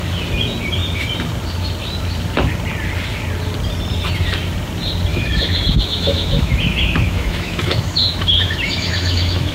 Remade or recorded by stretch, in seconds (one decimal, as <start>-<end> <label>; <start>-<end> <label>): 0.0-5.1 recorded; 5.1-9.5 remade